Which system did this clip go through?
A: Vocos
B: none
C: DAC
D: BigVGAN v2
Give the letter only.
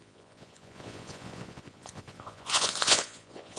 A